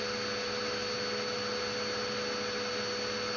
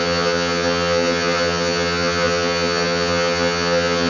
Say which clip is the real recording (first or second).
first